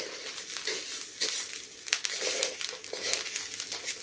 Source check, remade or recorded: recorded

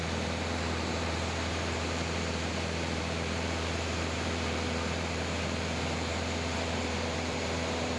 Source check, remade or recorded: remade